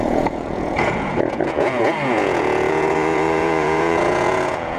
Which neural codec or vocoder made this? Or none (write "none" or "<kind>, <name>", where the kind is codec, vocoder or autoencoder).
vocoder, Vocos